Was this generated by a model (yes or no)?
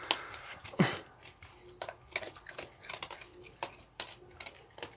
no